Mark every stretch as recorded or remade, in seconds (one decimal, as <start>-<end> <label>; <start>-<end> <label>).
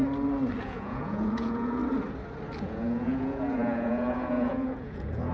0.0-0.6 recorded; 0.6-1.8 remade; 1.8-2.6 recorded; 2.6-5.3 remade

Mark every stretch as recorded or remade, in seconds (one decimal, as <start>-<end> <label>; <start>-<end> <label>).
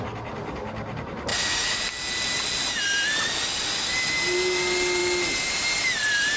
0.0-1.3 recorded; 1.3-1.8 remade; 1.8-6.4 recorded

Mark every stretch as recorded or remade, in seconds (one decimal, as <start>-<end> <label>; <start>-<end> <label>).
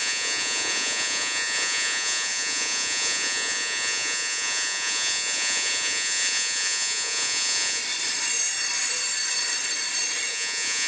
0.0-7.8 remade; 7.8-10.3 recorded; 10.3-10.9 remade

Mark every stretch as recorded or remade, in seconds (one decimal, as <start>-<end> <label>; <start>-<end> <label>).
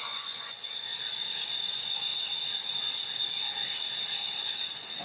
0.0-0.9 remade; 0.9-1.7 recorded; 1.7-2.1 remade; 2.1-4.4 recorded; 4.4-5.0 remade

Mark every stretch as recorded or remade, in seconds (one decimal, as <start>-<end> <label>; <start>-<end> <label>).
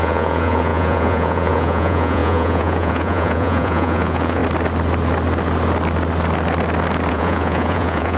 0.0-4.4 remade; 4.4-7.1 recorded; 7.1-8.2 remade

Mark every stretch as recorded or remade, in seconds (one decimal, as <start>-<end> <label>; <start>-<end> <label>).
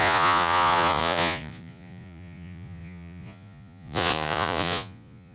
0.0-5.3 remade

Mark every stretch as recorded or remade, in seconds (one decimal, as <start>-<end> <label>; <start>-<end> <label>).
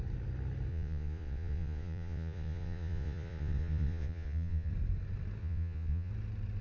0.0-0.7 recorded; 0.7-4.7 remade; 4.7-5.4 recorded; 5.4-6.1 remade; 6.1-6.6 recorded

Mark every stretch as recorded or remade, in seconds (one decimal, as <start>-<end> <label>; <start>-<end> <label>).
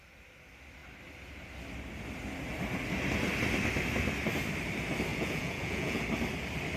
0.0-5.1 recorded; 5.1-6.0 remade; 6.0-6.8 recorded